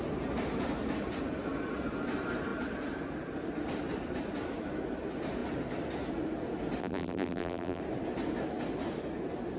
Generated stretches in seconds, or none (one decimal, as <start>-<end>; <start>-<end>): 6.8-7.8